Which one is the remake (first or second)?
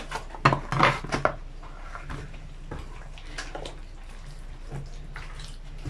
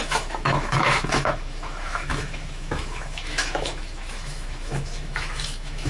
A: second